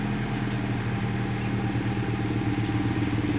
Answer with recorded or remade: recorded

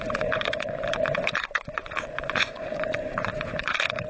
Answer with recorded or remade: remade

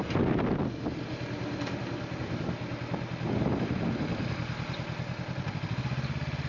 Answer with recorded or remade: recorded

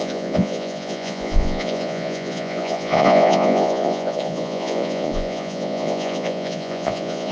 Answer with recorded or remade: remade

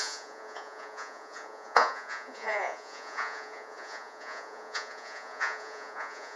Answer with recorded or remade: remade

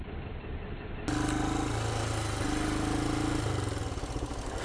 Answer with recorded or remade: recorded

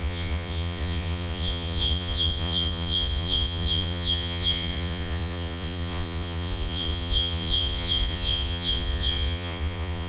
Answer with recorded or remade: remade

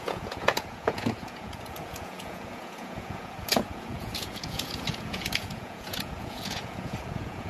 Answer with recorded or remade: remade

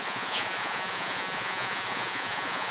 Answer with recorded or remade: remade